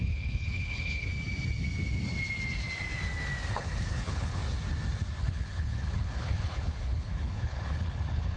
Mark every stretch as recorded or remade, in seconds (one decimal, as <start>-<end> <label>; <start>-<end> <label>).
0.0-1.1 remade; 1.1-3.5 recorded; 3.5-4.4 remade; 4.4-5.2 recorded; 5.2-8.4 remade